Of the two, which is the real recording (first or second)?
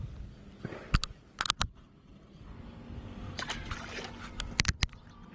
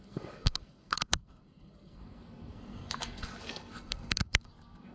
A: first